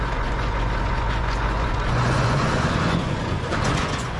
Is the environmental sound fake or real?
fake